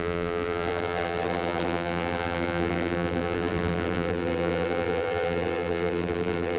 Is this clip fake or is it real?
fake